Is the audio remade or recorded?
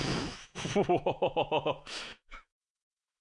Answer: remade